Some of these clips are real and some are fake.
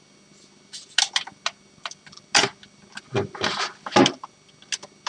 real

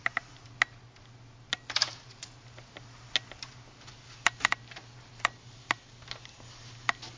real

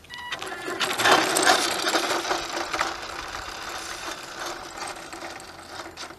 real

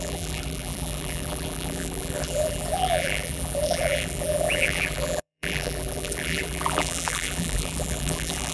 fake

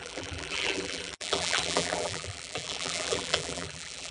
fake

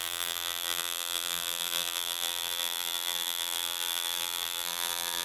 fake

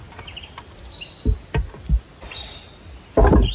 real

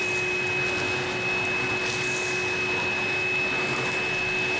real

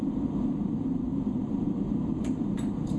fake